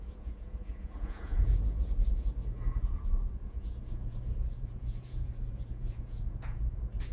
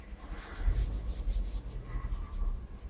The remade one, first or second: first